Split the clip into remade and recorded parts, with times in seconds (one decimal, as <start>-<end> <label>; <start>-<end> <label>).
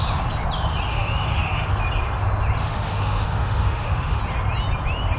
0.0-0.9 recorded; 0.9-1.7 remade; 1.7-2.6 recorded; 2.6-4.2 remade; 4.2-5.2 recorded